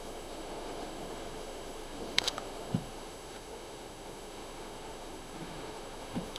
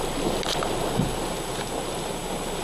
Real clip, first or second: second